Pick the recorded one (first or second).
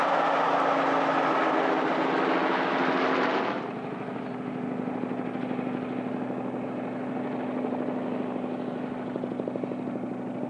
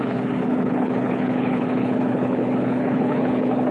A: first